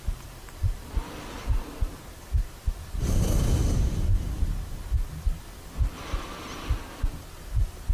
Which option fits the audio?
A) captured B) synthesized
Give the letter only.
A